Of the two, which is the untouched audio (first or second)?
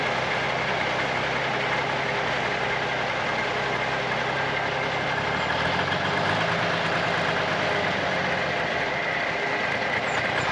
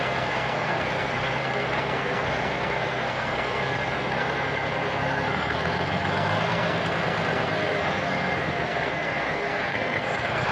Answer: first